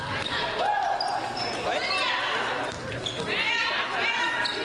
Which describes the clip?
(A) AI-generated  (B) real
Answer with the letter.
B